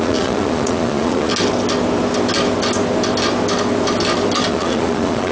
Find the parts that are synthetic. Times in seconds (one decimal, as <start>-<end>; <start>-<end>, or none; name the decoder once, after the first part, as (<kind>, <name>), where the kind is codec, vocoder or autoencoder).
0.0-1.3 (vocoder, Vocos); 4.5-5.3